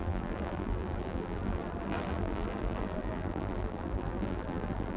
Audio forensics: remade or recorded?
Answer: remade